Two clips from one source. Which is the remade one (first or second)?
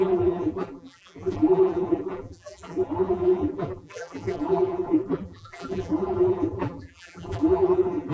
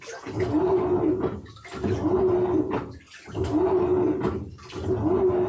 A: first